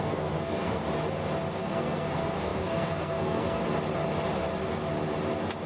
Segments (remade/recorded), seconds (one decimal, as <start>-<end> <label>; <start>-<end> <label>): 0.0-0.8 remade; 0.8-1.6 recorded; 1.6-3.6 remade; 3.6-5.7 recorded